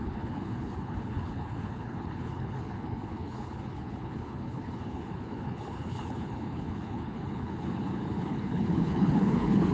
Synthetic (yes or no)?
yes